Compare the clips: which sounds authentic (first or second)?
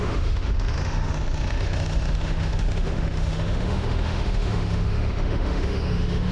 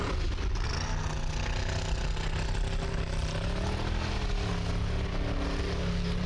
second